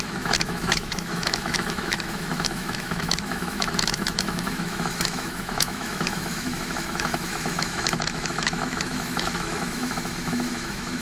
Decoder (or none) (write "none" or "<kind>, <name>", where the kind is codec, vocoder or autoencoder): autoencoder, DAC-VAE